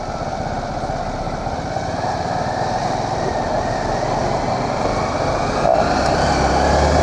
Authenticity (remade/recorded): recorded